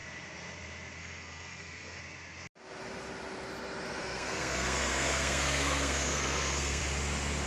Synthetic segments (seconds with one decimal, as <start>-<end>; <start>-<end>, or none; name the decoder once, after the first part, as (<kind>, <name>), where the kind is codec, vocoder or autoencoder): 1.0-2.0 (codec, SNAC); 4.0-6.8